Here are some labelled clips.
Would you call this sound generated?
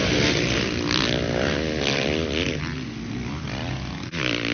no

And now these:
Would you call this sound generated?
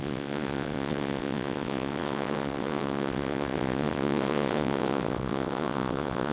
yes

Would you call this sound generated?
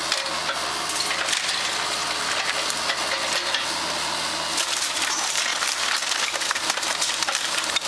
no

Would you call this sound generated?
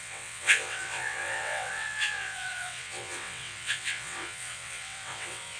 yes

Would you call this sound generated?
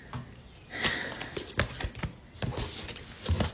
no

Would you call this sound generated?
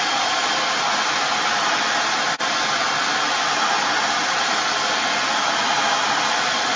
no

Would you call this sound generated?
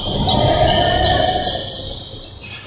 no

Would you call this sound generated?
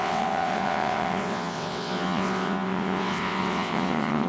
yes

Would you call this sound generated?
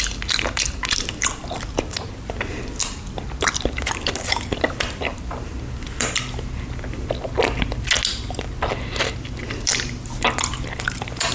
no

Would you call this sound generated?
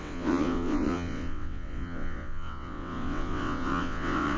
yes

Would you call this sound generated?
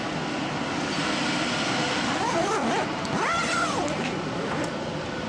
no